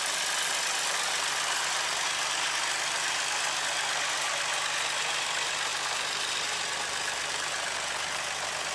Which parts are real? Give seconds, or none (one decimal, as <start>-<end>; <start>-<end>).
0.0-8.7